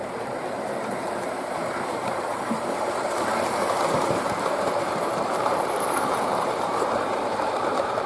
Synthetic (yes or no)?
yes